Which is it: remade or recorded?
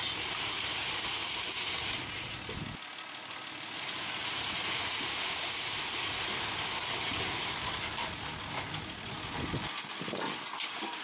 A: recorded